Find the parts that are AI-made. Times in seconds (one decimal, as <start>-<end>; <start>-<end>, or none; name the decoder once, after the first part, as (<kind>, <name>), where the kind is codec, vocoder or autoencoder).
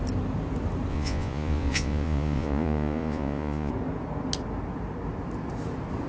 0.9-3.7 (vocoder, Vocos)